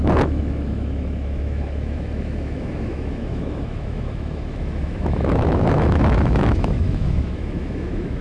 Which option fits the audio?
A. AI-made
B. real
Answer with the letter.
A